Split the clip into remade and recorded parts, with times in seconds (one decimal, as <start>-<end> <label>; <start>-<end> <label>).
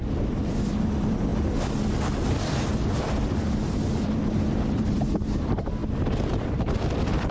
0.0-1.3 remade; 1.3-3.0 recorded; 3.0-5.8 remade; 5.8-6.3 recorded; 6.3-7.3 remade